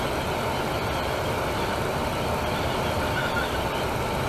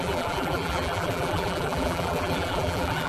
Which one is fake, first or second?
second